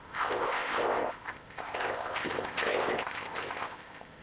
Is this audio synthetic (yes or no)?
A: yes